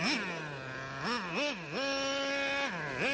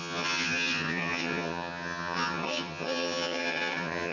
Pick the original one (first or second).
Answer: first